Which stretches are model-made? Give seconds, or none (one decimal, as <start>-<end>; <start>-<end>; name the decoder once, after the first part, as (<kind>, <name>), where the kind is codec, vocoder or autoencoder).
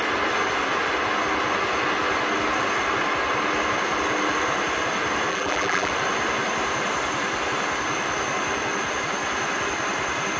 5.3-5.9 (vocoder, BigVGAN v2)